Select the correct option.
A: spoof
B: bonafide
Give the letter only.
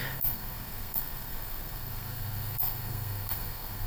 A